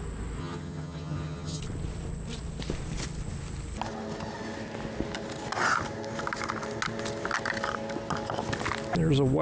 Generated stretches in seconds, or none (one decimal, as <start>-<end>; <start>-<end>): 0.4-1.6